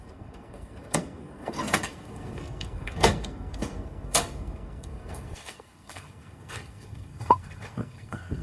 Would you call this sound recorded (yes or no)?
no